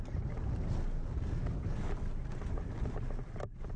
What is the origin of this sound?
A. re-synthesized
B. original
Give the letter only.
B